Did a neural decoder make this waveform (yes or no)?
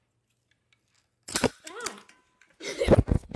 no